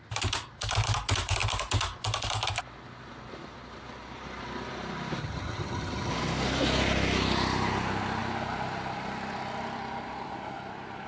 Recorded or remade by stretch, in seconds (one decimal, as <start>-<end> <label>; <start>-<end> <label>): 0.0-5.2 recorded; 5.2-6.1 remade; 6.1-11.1 recorded